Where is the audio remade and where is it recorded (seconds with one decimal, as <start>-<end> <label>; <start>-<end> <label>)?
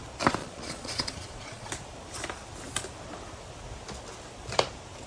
0.0-0.4 recorded; 0.4-1.7 remade; 1.7-5.1 recorded